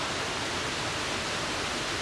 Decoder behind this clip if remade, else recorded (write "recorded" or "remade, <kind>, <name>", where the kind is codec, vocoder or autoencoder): recorded